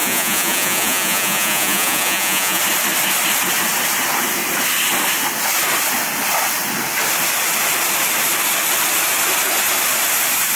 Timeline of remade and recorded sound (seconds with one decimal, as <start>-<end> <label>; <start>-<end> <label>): 0.0-2.6 remade; 2.6-10.6 recorded